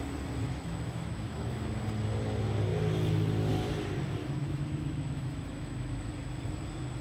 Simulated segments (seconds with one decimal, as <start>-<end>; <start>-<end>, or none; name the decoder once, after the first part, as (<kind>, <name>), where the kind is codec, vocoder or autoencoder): 0.4-1.7 (autoencoder, DAC-VAE); 4.2-6.1